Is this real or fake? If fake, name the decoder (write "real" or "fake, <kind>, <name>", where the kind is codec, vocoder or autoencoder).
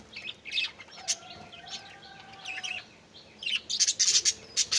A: real